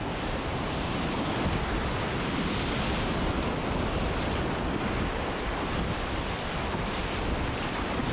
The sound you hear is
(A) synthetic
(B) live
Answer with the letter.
B